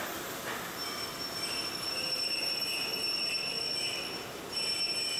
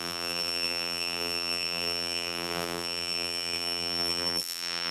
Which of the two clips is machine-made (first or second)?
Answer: second